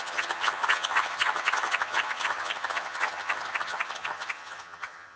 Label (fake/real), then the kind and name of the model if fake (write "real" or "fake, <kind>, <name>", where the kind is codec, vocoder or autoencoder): fake, vocoder, HiFi-GAN